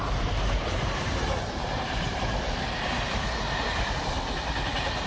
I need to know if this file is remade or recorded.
remade